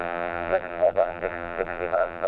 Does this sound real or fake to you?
fake